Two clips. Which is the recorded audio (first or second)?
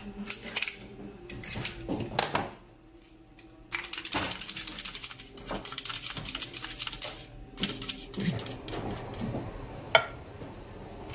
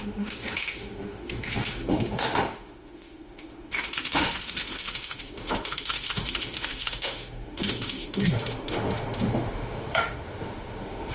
first